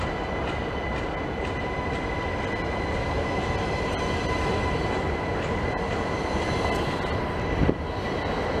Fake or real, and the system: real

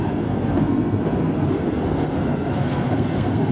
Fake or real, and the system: fake, codec, SNAC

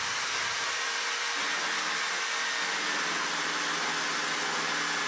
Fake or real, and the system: real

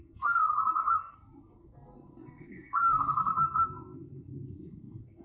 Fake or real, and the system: fake, codec, SNAC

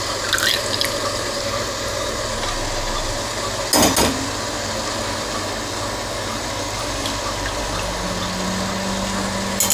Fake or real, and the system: real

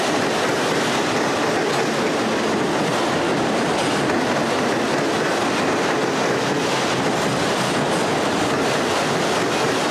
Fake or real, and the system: real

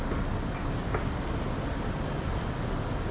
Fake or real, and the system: real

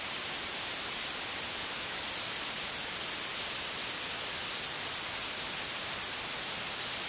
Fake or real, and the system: real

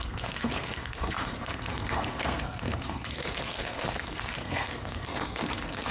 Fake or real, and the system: fake, codec, SNAC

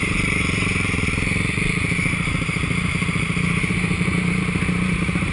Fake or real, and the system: fake, vocoder, BigVGAN v2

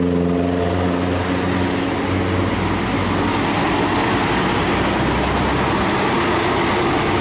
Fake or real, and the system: real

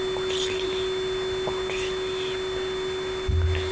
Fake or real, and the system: real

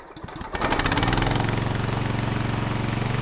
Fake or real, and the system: real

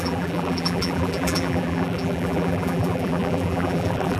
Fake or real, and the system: fake, vocoder, BigVGAN v2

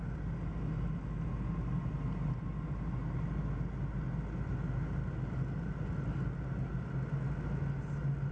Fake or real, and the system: real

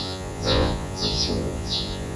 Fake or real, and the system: fake, vocoder, Vocos